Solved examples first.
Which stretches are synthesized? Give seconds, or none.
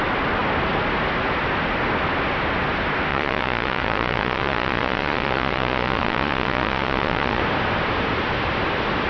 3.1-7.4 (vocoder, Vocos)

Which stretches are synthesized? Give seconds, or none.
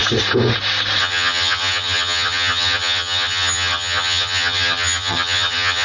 1.0-5.8 (vocoder, HiFi-GAN)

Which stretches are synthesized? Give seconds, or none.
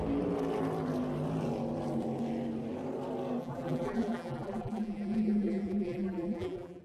3.4-6.8 (vocoder, BigVGAN v2)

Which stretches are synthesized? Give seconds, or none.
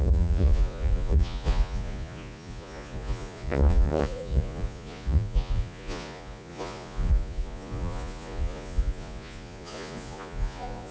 0.0-10.9 (vocoder, Vocos)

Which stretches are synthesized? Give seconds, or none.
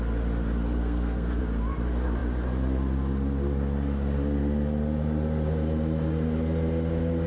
0.8-1.4 (codec, SNAC)